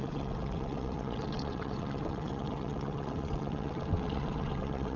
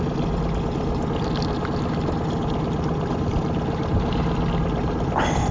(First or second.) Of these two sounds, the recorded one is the second